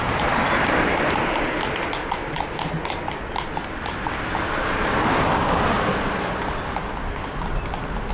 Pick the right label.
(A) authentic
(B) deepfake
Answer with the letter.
A